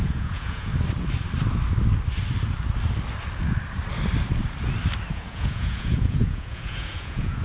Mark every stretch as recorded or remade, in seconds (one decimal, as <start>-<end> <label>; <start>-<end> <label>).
0.0-0.7 remade; 0.7-5.1 recorded; 5.1-7.4 remade